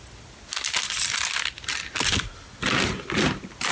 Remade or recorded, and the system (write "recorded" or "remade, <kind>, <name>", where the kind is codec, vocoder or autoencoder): recorded